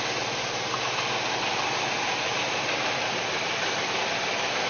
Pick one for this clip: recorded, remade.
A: recorded